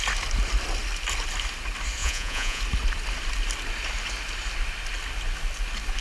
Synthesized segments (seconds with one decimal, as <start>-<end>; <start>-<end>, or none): 2.0-2.6